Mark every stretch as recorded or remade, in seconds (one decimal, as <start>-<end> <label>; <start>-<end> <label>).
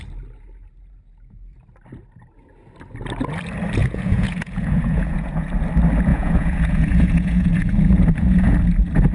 0.0-3.8 recorded; 3.8-5.5 remade; 5.5-6.1 recorded; 6.1-8.6 remade; 8.6-9.1 recorded